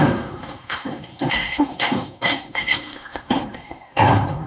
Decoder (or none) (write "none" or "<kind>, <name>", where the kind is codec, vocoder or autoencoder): codec, SNAC